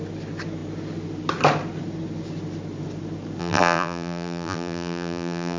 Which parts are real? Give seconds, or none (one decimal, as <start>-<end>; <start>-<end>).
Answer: 0.0-3.4